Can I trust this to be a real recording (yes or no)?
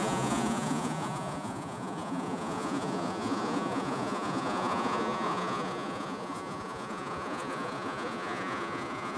no